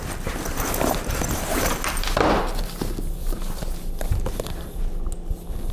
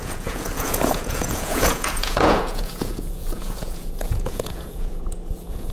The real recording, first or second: first